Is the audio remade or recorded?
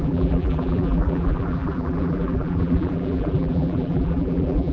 remade